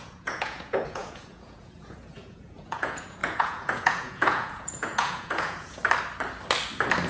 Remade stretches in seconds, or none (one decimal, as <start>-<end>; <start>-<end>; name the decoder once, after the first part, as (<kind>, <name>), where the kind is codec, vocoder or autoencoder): 0.0-5.8 (vocoder, Vocos)